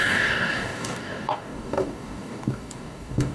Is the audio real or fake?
fake